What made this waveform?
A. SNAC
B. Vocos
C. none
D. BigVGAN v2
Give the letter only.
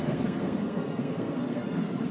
A